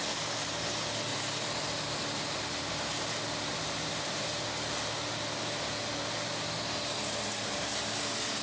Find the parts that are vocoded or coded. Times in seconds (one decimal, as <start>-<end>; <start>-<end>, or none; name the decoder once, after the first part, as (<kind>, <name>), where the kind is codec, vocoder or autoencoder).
1.1-4.4 (vocoder, BigVGAN v2)